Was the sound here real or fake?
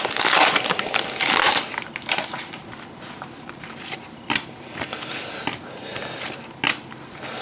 real